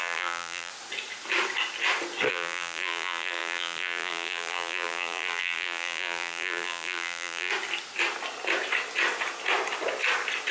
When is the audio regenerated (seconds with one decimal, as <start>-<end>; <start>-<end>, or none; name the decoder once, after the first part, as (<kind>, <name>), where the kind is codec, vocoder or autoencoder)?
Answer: 0.0-0.7 (vocoder, BigVGAN v2); 2.3-7.5